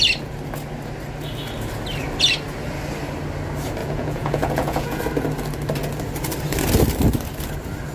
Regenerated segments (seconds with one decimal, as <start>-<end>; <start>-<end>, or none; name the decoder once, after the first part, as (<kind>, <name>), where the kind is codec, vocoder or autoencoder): 3.8-5.0 (vocoder, Vocos)